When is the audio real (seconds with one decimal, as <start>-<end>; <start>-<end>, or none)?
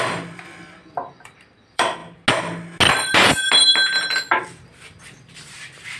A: 2.0-5.3